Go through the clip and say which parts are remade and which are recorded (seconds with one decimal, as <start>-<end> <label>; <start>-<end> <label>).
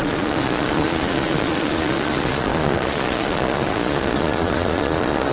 0.0-5.3 remade